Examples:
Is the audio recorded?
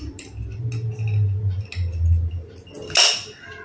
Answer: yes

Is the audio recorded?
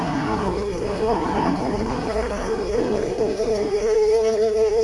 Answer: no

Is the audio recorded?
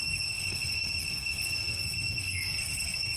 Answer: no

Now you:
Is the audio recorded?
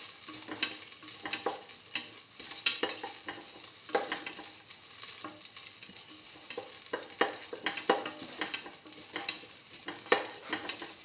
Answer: yes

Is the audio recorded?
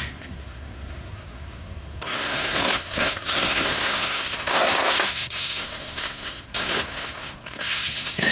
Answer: no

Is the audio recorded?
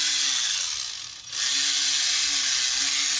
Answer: yes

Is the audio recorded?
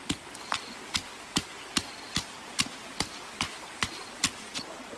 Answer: yes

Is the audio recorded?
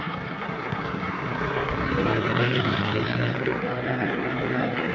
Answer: no